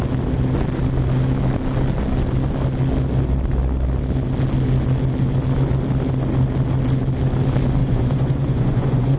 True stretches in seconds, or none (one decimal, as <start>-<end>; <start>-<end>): 0.0-7.8